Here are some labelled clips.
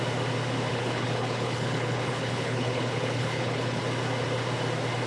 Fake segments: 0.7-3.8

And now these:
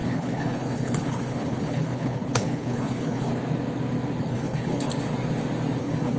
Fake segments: 0.0-3.3; 4.2-4.9; 5.8-6.2

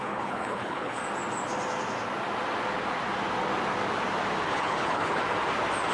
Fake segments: 0.0-1.0; 4.5-5.2

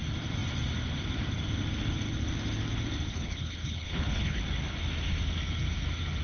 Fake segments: 3.1-4.4

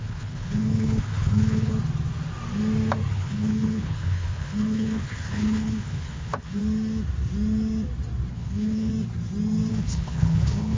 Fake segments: 0.0-1.7; 3.1-6.6; 8.3-8.9; 9.7-10.8

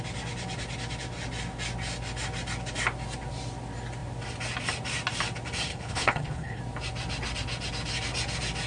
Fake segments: 5.7-6.6

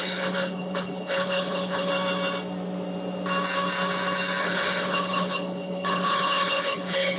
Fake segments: 0.0-1.9; 4.4-7.2